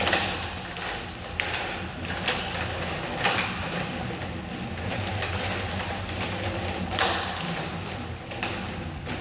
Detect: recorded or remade recorded